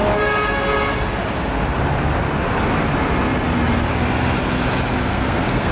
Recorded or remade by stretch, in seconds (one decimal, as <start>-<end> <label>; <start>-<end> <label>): 0.0-5.1 recorded; 5.1-5.7 remade